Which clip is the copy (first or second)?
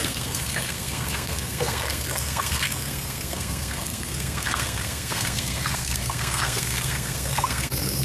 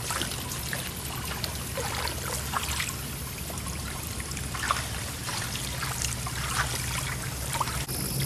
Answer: first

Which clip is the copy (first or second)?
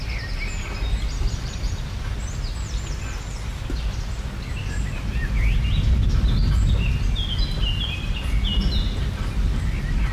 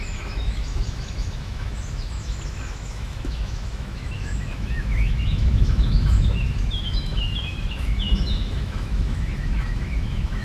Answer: second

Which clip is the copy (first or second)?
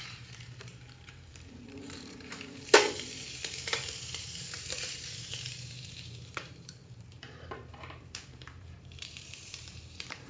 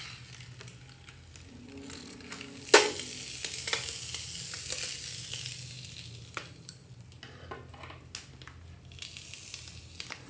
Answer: first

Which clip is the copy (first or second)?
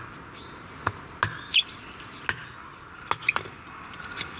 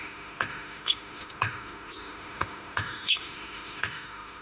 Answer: second